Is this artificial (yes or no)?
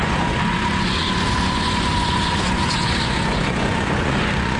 yes